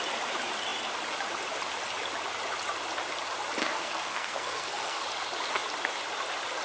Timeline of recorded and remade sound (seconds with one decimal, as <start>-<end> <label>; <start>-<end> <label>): 0.0-3.6 recorded; 3.6-5.0 remade; 5.0-6.6 recorded